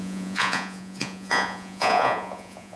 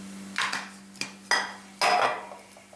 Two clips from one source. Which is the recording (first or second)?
second